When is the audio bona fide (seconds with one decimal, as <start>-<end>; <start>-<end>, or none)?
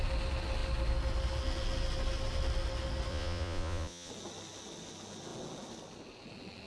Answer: 0.0-3.1; 4.1-6.7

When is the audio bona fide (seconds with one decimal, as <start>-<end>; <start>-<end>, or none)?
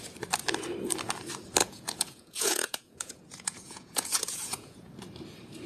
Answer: 0.0-1.6; 4.9-5.7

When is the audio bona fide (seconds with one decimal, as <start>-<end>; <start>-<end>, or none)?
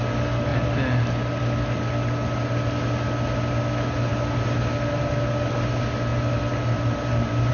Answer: 0.0-7.5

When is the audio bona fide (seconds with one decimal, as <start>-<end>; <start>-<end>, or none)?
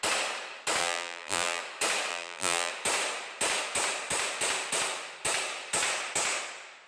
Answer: 0.0-0.8; 1.6-2.1; 2.7-6.9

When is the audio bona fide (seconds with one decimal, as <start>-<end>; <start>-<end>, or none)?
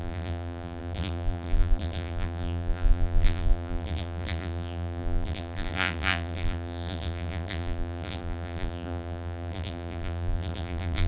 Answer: none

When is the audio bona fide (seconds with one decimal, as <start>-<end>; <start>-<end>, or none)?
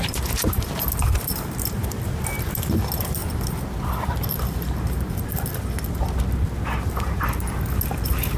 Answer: 0.0-8.4